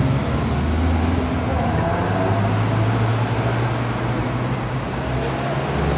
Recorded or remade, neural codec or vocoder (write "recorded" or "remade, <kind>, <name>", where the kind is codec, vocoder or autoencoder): recorded